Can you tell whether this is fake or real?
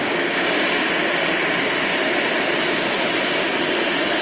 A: real